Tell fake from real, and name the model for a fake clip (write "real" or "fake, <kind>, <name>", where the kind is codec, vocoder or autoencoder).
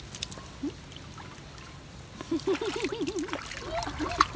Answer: real